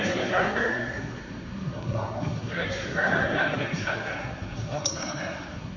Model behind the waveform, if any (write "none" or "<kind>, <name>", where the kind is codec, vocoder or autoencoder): codec, SNAC